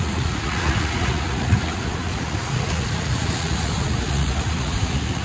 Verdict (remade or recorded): remade